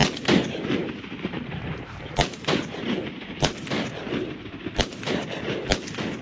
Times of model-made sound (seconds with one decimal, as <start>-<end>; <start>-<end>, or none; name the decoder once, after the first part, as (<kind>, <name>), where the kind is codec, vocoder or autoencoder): 0.8-1.9 (vocoder, BigVGAN v2); 2.3-2.8

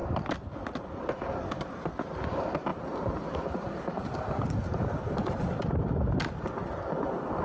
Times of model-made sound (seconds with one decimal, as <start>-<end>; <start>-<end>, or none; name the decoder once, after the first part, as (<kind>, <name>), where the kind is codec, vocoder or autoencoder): none

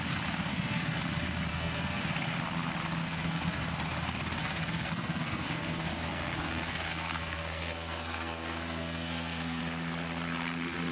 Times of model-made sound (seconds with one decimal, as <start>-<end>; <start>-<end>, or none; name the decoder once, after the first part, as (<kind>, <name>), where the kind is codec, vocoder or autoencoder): 0.5-1.0 (codec, SNAC); 1.5-2.0; 3.0-3.6; 4.4-9.6

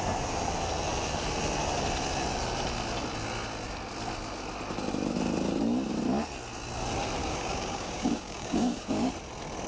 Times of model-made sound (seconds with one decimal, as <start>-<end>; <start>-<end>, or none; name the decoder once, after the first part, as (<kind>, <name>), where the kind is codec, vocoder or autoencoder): 7.2-9.1 (codec, DAC)

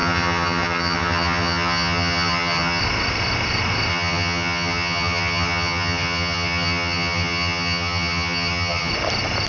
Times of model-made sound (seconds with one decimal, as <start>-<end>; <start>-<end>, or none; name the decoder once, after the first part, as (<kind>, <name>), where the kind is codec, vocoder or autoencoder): 0.0-2.8 (vocoder, HiFi-GAN); 3.9-8.9

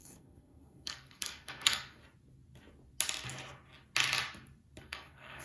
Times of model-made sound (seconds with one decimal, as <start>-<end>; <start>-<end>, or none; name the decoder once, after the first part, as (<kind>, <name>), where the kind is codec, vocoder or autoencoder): 0.0-2.0 (codec, SNAC); 4.8-5.4